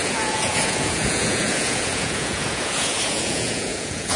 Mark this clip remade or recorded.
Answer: remade